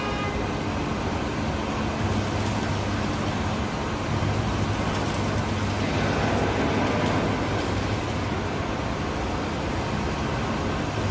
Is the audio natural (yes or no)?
yes